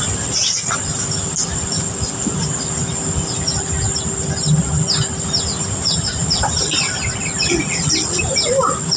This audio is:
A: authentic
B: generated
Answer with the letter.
A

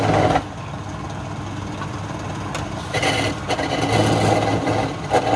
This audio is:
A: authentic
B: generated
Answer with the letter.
A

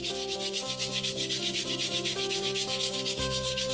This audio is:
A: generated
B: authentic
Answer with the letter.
A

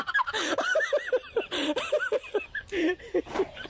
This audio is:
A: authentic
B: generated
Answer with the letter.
B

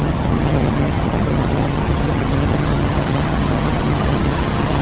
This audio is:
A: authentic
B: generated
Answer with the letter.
B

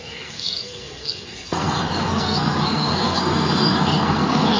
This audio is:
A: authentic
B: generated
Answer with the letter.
B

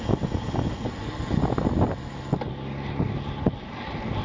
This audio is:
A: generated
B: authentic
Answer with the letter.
B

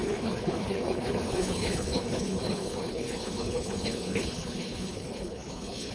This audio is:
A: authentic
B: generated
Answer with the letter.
B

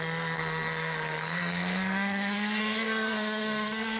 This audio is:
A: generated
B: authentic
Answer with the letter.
A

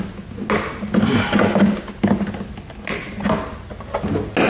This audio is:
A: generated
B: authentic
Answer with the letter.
B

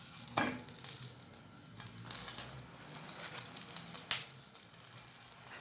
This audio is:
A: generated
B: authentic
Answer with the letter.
B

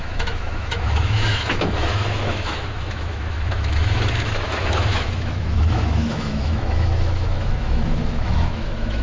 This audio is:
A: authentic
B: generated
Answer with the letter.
B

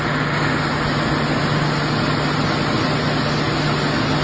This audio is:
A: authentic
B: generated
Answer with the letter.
A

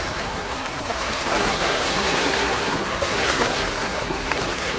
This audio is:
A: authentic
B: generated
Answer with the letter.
B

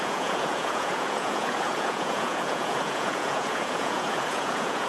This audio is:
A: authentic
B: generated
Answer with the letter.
B